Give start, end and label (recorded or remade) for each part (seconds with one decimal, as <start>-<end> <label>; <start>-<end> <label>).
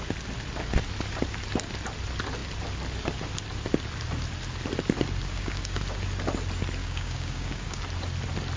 0.0-5.3 recorded; 5.3-5.8 remade; 5.8-6.8 recorded; 6.8-7.8 remade; 7.8-8.6 recorded